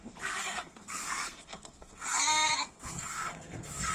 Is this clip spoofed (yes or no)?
yes